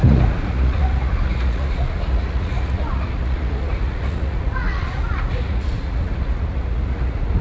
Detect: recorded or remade remade